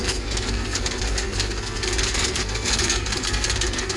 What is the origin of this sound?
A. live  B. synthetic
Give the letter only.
B